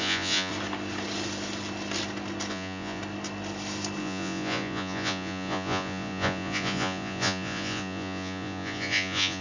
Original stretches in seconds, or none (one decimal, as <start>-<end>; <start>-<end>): 0.5-2.5; 3.0-4.0